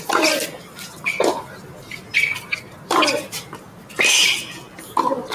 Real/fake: real